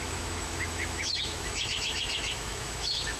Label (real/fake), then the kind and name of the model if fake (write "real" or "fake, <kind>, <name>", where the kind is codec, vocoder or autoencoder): fake, autoencoder, DAC-VAE